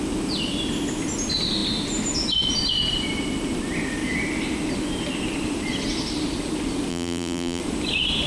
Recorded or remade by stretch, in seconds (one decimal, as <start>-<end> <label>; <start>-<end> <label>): 0.0-6.9 recorded; 6.9-7.6 remade; 7.6-8.3 recorded